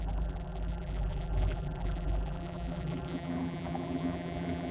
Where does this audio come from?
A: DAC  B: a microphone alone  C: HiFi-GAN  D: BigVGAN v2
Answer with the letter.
D